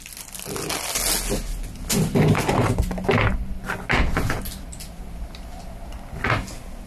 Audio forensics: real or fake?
real